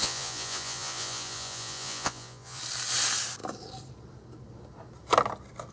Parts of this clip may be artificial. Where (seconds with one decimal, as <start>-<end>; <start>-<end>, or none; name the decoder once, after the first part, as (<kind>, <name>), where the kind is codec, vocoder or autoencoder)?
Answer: 0.0-2.6 (vocoder, Vocos)